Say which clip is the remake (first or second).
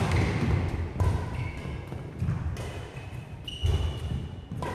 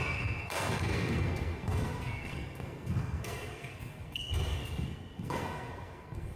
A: second